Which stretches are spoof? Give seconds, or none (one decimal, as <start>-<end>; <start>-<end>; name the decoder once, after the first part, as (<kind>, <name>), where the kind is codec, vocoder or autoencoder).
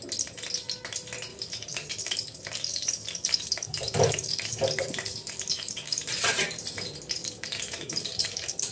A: 1.3-6.1 (codec, DAC); 7.2-8.7